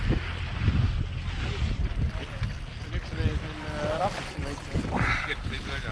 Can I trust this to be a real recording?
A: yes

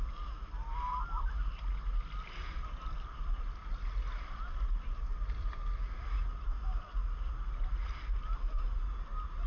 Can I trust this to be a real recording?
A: yes